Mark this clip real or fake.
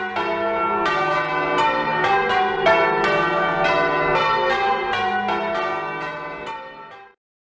real